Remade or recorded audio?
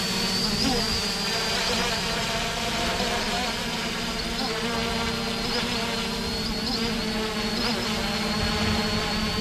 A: recorded